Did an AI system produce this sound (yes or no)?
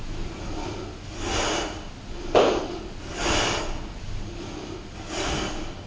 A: no